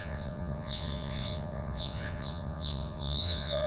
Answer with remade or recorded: remade